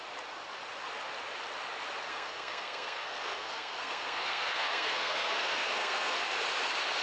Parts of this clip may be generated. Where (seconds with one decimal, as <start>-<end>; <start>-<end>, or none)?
2.1-6.2